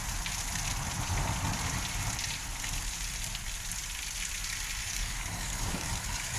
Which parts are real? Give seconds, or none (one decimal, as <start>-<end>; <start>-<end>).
0.0-4.8